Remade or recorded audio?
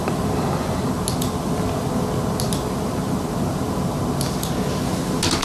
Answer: recorded